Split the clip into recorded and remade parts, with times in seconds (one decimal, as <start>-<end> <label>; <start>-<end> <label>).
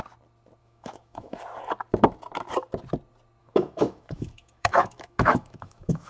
0.0-0.6 recorded; 0.6-1.4 remade; 1.4-3.4 recorded; 3.4-6.1 remade